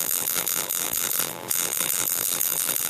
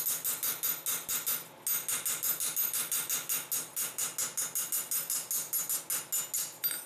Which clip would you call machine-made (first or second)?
first